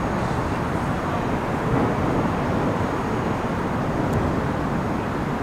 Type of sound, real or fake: real